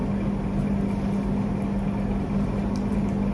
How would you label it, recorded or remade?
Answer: recorded